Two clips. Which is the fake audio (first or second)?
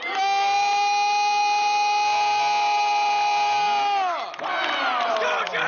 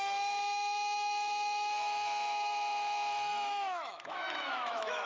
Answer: second